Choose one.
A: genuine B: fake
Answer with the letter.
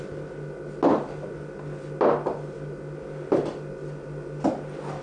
A